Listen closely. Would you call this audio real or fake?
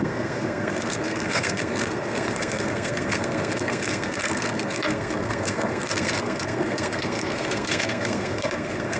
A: fake